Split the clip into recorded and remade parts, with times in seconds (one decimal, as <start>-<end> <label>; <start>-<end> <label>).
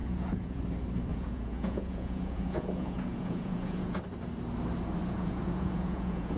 0.0-0.6 remade; 0.6-1.1 recorded; 1.1-4.0 remade; 4.0-5.0 recorded; 5.0-6.4 remade